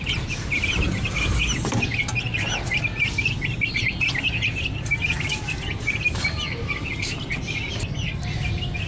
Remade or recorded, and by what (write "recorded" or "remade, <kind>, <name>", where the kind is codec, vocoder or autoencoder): recorded